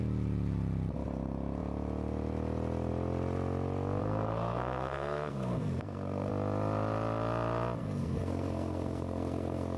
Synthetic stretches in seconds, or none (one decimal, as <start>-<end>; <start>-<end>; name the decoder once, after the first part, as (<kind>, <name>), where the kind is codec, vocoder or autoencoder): 4.0-6.3 (codec, SNAC); 7.8-9.8